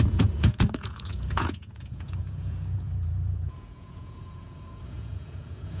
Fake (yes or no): yes